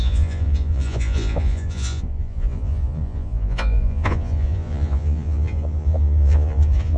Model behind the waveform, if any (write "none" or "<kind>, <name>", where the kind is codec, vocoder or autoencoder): vocoder, Vocos